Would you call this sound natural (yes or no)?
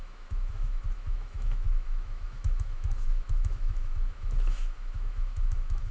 no